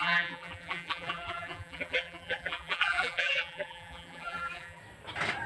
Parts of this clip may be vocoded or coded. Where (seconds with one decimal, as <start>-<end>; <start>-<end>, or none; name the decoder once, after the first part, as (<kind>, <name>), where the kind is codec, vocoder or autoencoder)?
0.0-4.8 (vocoder, BigVGAN v2)